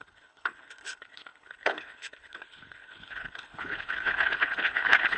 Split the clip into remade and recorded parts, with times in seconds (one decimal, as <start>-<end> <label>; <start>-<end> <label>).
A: 0.0-5.2 remade